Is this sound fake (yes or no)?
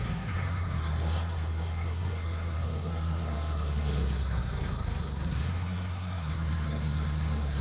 yes